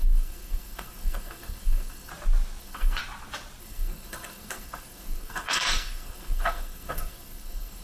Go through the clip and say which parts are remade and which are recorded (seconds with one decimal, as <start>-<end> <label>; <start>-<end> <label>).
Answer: 0.0-2.1 remade; 2.1-2.6 recorded; 2.6-3.0 remade; 3.0-3.6 recorded; 3.6-7.8 remade